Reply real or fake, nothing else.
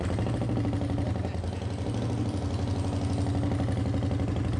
real